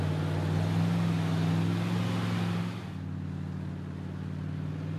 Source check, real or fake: real